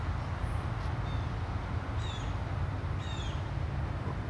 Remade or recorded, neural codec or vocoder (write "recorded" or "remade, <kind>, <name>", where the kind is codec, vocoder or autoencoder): recorded